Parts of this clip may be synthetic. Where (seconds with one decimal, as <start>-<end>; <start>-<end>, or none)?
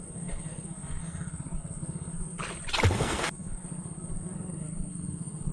0.0-2.4; 2.9-5.5